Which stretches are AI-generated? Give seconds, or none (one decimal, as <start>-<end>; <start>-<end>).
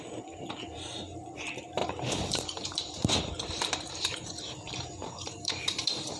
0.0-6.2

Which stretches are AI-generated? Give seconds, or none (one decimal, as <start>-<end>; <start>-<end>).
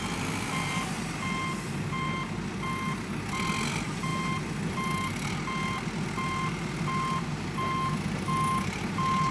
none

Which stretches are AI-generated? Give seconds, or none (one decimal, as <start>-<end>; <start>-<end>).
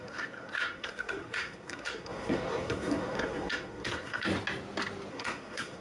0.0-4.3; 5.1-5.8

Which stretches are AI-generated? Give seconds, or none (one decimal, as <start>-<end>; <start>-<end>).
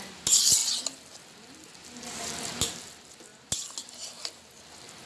none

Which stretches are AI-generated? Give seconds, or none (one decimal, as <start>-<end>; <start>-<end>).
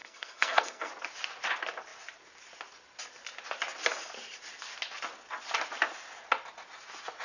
0.0-0.9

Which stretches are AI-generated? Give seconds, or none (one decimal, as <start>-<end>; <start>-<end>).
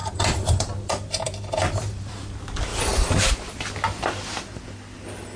0.0-2.3; 2.7-3.3